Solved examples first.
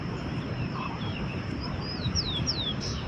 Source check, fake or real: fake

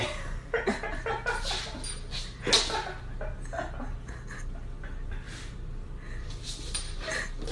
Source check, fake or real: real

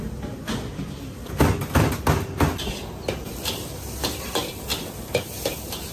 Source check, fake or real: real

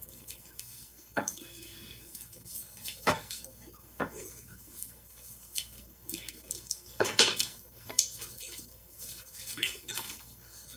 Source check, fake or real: fake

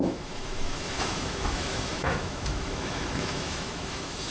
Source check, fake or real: fake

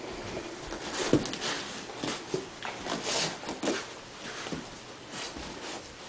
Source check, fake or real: real